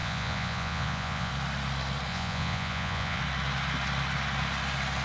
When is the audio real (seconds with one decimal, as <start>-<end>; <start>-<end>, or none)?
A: 1.3-2.1; 3.2-5.0